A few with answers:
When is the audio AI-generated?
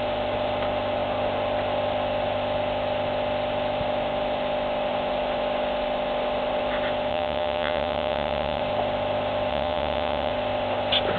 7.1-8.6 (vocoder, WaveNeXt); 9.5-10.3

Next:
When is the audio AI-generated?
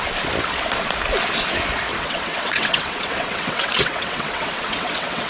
1.9-5.3 (vocoder, WaveNeXt)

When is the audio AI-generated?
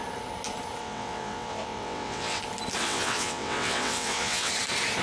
0.8-2.4 (vocoder, WaveNeXt); 2.8-4.5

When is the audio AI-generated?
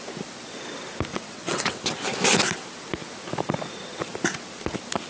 1.1-1.8 (vocoder, WaveNeXt)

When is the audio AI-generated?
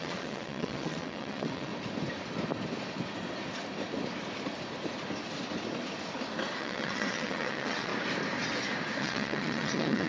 0.0-1.7 (vocoder, WaveNeXt); 6.6-7.9; 9.0-10.1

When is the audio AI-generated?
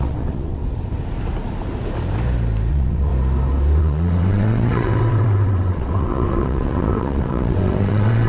0.0-0.6 (vocoder, WaveNeXt); 2.7-3.1; 3.8-8.3